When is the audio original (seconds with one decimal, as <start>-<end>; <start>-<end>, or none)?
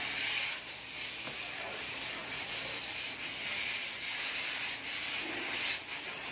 0.0-6.3